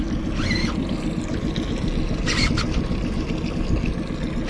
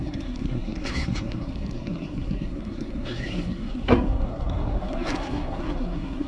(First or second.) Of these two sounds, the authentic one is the first